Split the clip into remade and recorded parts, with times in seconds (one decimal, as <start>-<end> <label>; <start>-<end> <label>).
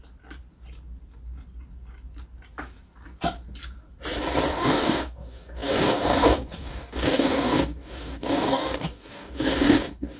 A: 0.0-4.5 recorded; 4.5-10.2 remade